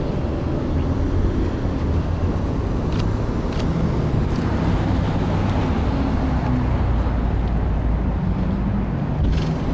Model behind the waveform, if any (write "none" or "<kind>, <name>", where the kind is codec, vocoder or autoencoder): none